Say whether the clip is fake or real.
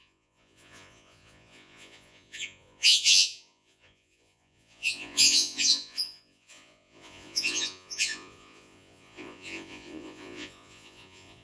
fake